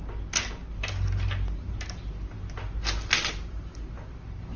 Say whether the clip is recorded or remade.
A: recorded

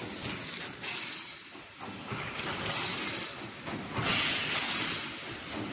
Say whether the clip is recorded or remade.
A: recorded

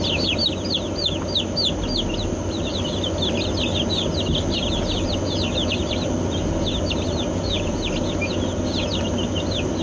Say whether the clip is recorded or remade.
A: recorded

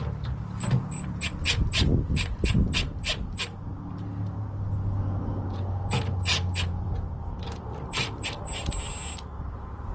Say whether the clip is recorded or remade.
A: recorded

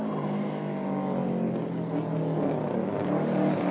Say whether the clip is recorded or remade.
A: recorded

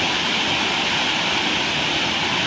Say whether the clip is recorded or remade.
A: recorded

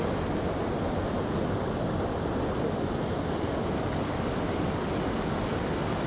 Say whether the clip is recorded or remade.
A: recorded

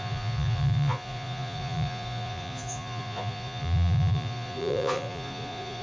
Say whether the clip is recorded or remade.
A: remade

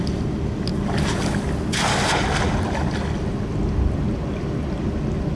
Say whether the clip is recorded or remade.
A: recorded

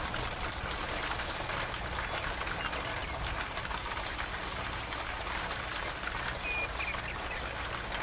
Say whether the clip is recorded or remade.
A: recorded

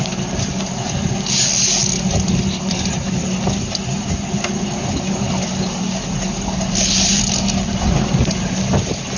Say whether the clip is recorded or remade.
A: recorded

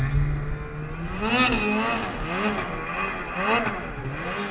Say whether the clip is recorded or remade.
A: recorded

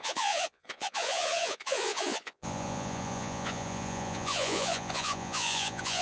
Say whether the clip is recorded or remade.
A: remade